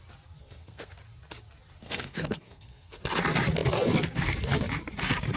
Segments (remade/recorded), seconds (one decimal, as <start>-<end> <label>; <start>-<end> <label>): 0.0-0.4 recorded; 0.4-0.9 remade; 0.9-1.8 recorded; 1.8-3.0 remade; 3.0-5.4 recorded